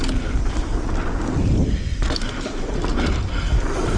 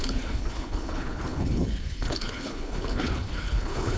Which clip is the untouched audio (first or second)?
first